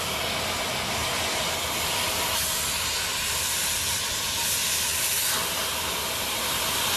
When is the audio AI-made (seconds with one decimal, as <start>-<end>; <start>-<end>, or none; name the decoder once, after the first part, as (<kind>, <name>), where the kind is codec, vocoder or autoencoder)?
none